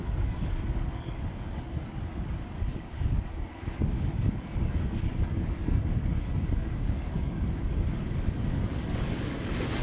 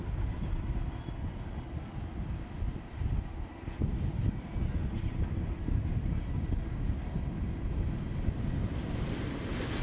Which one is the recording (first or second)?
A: second